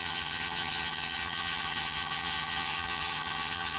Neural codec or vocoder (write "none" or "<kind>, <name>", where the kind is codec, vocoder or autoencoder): vocoder, HiFi-GAN